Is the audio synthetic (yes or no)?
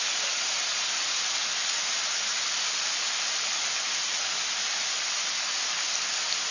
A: no